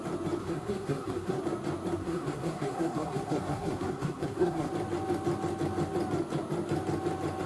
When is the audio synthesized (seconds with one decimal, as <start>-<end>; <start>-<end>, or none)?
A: 0.4-1.4; 2.0-4.7